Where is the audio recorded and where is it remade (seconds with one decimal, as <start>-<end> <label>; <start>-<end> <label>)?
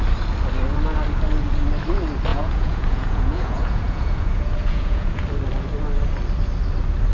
0.0-2.3 recorded; 2.3-5.2 remade; 5.2-7.1 recorded